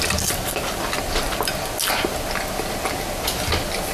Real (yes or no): yes